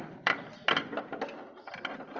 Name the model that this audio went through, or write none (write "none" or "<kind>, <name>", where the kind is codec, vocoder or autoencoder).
none